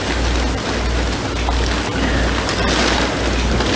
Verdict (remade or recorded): remade